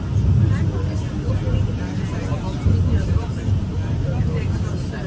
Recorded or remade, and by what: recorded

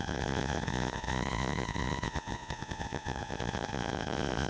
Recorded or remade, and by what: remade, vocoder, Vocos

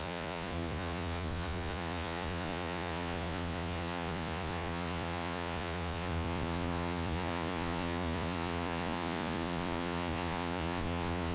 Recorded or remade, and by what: remade, vocoder, Vocos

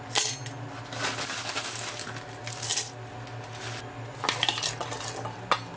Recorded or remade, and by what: recorded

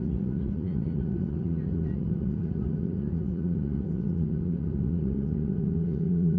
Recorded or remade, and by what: remade, vocoder, Vocos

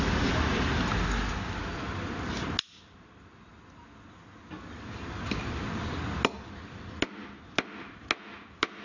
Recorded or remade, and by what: recorded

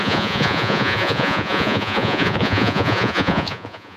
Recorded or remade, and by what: remade, vocoder, Vocos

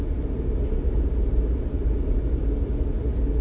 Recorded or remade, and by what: recorded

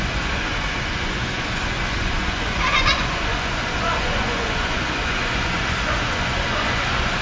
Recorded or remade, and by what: remade, vocoder, Vocos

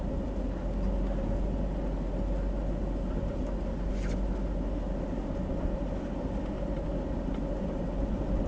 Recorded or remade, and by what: recorded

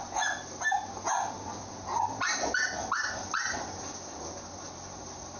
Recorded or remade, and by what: recorded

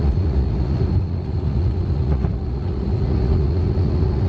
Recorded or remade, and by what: remade, vocoder, Vocos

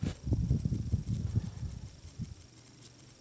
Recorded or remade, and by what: recorded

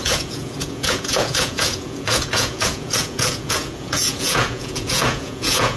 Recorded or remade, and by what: remade, vocoder, Vocos